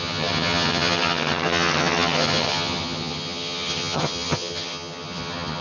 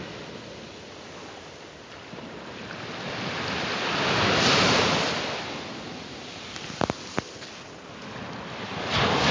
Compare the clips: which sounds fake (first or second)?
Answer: first